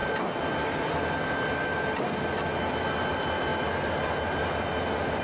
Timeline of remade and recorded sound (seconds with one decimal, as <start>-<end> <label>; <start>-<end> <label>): 0.0-5.2 recorded